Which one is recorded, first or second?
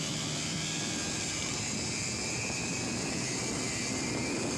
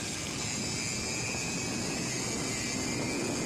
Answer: second